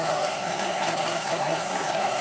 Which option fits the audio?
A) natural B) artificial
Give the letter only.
B